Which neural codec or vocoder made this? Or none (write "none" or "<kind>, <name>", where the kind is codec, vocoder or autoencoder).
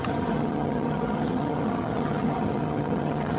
vocoder, HiFi-GAN